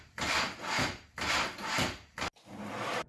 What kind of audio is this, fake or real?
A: real